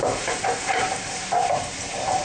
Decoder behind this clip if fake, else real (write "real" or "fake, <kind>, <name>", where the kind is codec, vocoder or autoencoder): fake, vocoder, BigVGAN v2